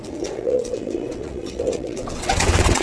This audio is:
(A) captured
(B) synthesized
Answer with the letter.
B